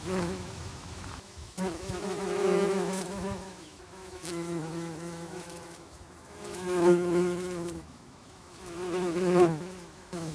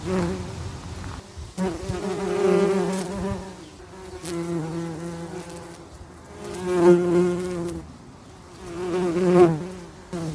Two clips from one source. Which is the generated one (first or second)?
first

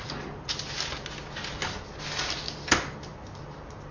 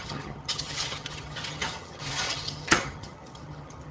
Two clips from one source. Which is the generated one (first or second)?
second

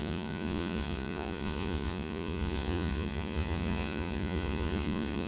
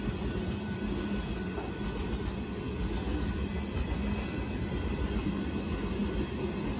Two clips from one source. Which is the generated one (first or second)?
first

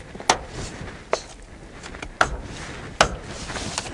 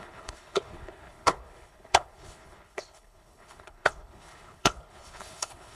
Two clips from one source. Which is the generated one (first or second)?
second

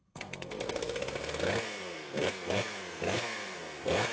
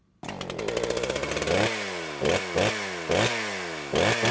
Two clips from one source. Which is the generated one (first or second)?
first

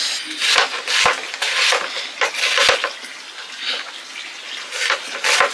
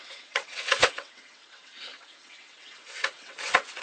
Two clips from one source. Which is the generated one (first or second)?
second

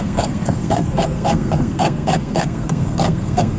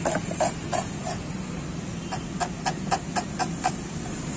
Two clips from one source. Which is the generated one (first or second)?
first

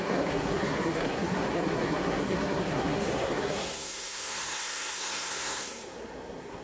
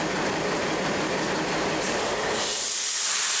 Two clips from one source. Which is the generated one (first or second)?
first